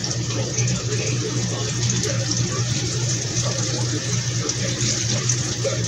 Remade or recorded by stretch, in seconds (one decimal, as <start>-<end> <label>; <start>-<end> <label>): 0.0-4.0 remade; 4.0-4.6 recorded; 4.6-5.9 remade